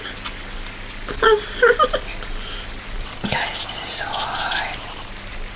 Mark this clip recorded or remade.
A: recorded